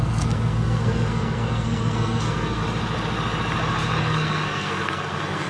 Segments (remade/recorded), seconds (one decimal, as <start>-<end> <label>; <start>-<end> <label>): 0.0-2.6 remade; 2.6-4.0 recorded; 4.0-5.5 remade